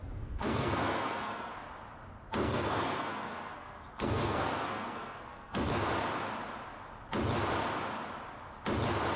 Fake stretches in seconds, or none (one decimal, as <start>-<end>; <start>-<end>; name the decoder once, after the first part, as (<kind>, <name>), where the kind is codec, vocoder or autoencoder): 0.0-1.5 (codec, SNAC); 2.4-5.7